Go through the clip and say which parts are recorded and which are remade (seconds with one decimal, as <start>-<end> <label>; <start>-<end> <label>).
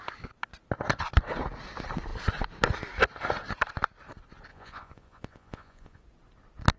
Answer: 0.0-4.5 recorded; 4.5-6.0 remade; 6.0-6.8 recorded